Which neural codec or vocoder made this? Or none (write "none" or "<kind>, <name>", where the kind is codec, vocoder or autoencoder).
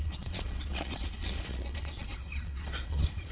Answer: vocoder, Vocos